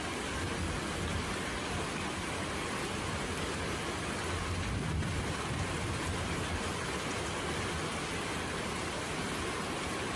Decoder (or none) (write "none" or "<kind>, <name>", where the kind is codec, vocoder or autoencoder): none